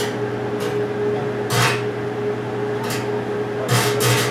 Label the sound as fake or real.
real